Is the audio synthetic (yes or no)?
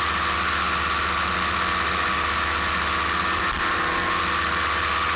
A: no